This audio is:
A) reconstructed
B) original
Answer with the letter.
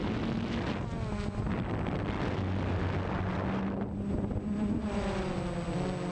B